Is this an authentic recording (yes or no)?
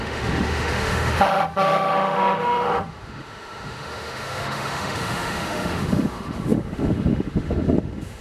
no